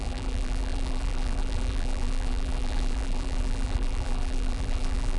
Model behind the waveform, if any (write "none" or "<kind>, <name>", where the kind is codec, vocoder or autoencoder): vocoder, BigVGAN v2